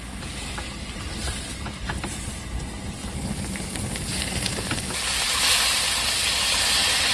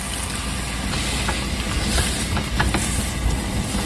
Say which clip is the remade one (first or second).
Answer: first